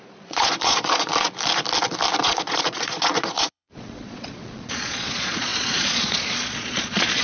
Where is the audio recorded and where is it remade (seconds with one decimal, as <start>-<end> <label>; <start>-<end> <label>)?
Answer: 0.0-1.1 remade; 1.1-2.2 recorded; 2.2-7.2 remade